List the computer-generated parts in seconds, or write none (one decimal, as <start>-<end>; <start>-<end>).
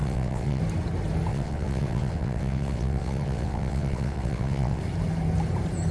0.0-0.6; 1.3-4.8